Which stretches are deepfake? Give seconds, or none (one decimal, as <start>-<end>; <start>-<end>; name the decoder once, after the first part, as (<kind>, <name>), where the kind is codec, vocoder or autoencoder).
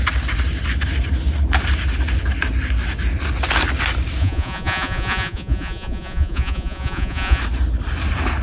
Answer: 4.2-7.4 (vocoder, Vocos)